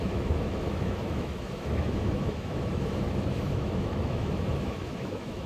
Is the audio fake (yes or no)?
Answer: yes